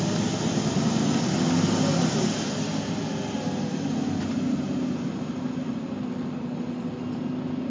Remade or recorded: recorded